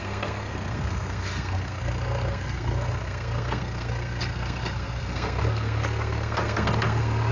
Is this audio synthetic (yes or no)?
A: yes